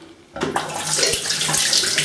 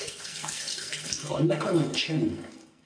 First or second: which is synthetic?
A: second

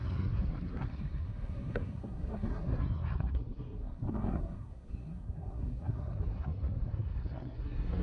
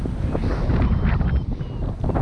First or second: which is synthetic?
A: first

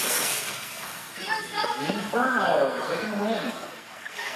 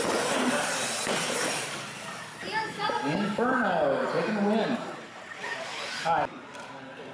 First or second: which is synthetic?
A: first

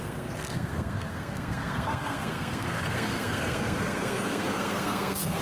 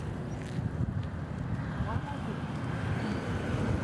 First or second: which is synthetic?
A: first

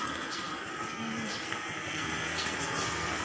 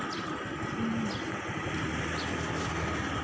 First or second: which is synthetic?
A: first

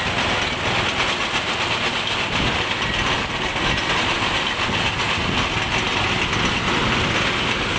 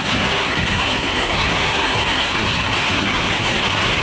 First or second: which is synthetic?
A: second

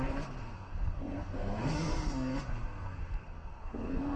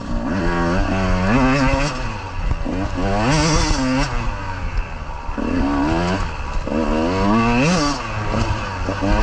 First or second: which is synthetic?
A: first